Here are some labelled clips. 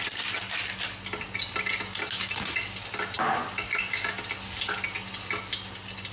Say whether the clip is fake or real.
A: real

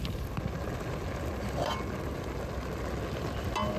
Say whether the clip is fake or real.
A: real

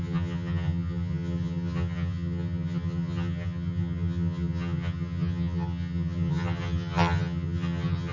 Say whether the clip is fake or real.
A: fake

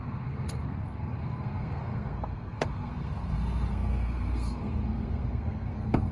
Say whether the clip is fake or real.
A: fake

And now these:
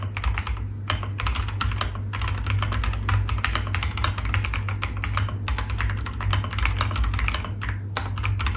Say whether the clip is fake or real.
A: real